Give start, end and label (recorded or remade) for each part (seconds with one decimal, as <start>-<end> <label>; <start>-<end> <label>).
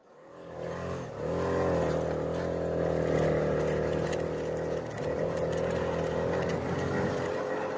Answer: 0.0-1.1 remade; 1.1-7.8 recorded